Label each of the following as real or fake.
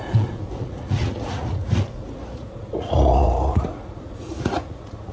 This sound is fake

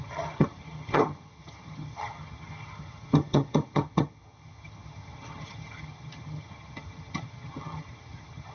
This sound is fake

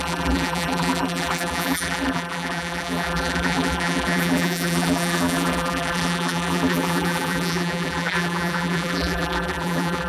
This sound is fake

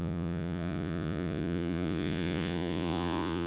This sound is fake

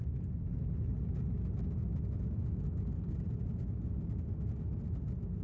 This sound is real